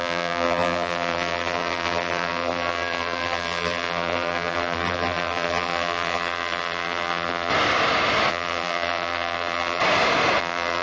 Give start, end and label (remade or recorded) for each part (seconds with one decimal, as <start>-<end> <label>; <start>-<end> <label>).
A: 0.0-7.5 remade; 7.5-8.3 recorded; 8.3-9.8 remade; 9.8-10.4 recorded; 10.4-10.8 remade